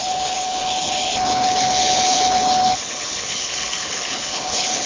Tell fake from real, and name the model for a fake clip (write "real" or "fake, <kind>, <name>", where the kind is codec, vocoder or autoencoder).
fake, codec, HILCodec